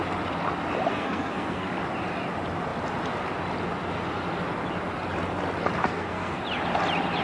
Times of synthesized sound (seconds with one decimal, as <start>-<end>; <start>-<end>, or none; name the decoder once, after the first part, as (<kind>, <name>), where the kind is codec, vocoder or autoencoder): 0.9-1.7 (codec, SNAC); 5.8-6.4